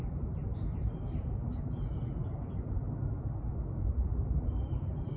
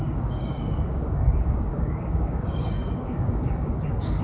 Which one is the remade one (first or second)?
second